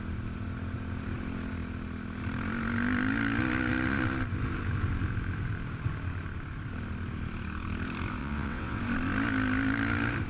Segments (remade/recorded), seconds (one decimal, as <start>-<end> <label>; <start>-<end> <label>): 0.0-8.2 recorded; 8.2-8.8 remade; 8.8-10.3 recorded